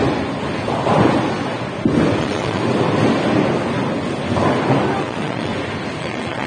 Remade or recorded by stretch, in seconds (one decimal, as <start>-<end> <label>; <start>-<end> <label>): 0.0-2.2 recorded; 2.2-2.6 remade; 2.6-5.0 recorded; 5.0-5.5 remade; 5.5-6.0 recorded; 6.0-6.5 remade